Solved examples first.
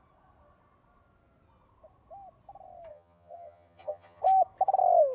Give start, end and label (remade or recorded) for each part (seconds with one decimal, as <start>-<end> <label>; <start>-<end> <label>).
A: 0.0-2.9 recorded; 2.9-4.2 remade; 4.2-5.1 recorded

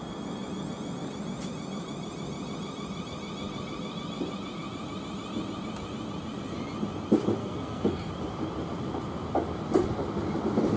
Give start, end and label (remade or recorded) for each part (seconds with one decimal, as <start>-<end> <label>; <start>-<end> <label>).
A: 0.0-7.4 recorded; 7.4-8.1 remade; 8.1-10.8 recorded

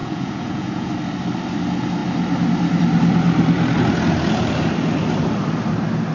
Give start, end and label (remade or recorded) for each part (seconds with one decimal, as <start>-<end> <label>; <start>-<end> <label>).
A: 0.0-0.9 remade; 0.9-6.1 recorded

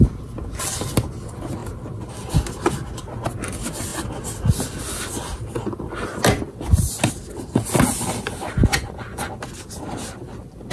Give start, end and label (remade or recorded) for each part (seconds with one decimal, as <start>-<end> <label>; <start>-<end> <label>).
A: 0.0-8.6 recorded; 8.6-9.3 remade; 9.3-10.7 recorded

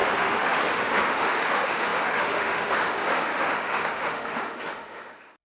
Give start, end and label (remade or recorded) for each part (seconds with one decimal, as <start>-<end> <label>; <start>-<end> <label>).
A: 0.0-5.4 remade

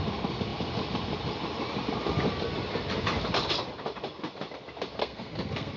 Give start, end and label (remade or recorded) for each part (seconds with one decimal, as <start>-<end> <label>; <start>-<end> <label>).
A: 0.0-5.0 recorded; 5.0-5.8 remade

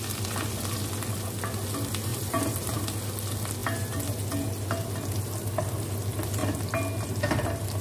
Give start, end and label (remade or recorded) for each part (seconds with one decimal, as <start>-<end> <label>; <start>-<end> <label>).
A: 0.0-2.1 recorded; 2.1-2.8 remade; 2.8-7.8 recorded

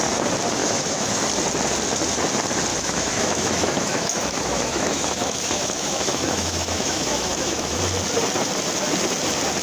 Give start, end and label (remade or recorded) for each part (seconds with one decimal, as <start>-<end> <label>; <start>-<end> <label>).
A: 0.0-0.6 recorded; 0.6-1.2 remade; 1.2-2.7 recorded; 2.7-7.8 remade; 7.8-9.6 recorded